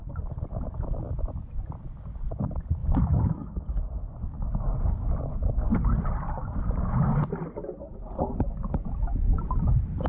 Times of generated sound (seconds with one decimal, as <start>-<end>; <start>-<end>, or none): 2.8-3.6